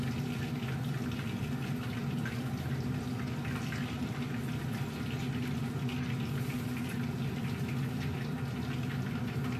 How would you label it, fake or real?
real